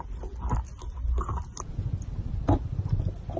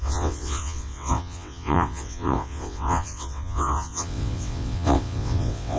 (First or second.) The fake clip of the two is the second